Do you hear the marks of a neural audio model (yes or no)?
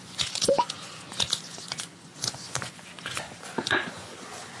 yes